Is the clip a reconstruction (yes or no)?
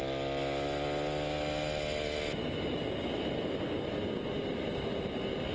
no